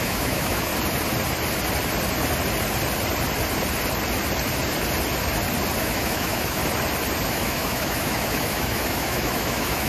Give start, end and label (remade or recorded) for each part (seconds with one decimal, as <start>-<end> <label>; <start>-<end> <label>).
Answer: 0.0-0.7 remade; 0.7-5.8 recorded; 5.8-6.6 remade; 6.6-7.3 recorded; 7.3-9.9 remade